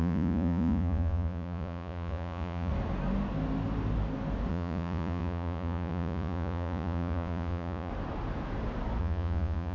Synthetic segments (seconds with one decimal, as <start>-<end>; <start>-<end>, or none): 0.0-2.7; 4.5-7.9; 9.0-9.7